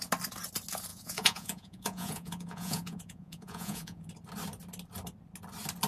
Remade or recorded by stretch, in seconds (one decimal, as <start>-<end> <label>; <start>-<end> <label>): 0.0-0.9 recorded; 0.9-4.1 remade; 4.1-5.9 recorded

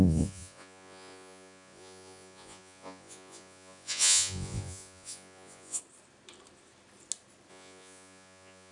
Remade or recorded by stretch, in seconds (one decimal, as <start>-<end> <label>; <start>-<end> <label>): 0.0-5.8 remade; 5.8-7.5 recorded; 7.5-8.7 remade

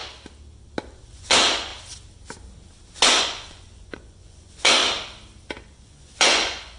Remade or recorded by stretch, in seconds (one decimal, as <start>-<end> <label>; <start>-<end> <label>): 0.0-1.1 recorded; 1.1-1.7 remade; 1.7-3.2 recorded; 3.2-4.8 remade; 4.8-5.6 recorded; 5.6-6.8 remade